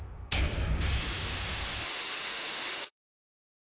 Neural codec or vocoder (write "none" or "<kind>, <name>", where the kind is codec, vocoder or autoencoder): autoencoder, DAC-VAE